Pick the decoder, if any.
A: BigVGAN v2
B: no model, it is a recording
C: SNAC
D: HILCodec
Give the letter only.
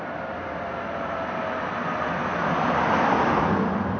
A